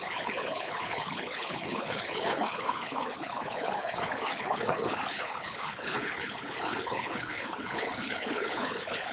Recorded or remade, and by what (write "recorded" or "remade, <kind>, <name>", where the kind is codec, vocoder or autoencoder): remade, codec, HILCodec